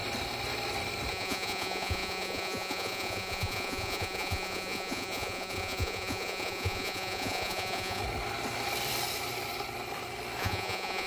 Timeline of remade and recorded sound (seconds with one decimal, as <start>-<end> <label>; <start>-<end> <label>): 0.0-1.1 recorded; 1.1-8.0 remade; 8.0-10.4 recorded; 10.4-11.1 remade